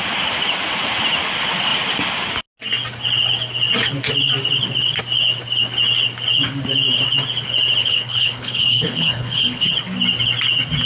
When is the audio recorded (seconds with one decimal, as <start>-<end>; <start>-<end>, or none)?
0.0-7.8; 9.7-10.9